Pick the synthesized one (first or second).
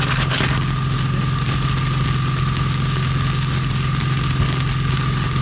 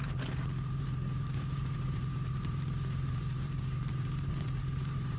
second